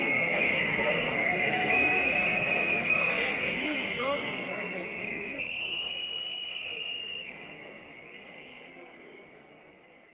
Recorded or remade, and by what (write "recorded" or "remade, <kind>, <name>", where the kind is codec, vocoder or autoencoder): remade, codec, SNAC